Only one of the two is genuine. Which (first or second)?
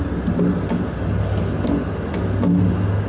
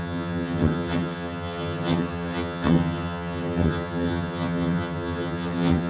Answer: first